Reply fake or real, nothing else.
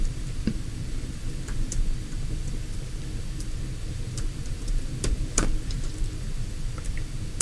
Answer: fake